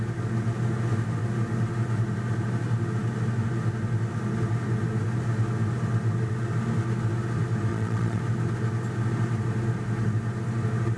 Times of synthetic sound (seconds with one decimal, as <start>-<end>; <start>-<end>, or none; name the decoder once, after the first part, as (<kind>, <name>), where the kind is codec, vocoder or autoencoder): 7.7-8.2 (vocoder, Vocos)